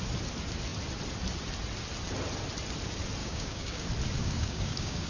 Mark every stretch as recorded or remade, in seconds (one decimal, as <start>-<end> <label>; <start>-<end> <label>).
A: 0.0-3.2 recorded; 3.2-3.8 remade; 3.8-4.2 recorded; 4.2-5.1 remade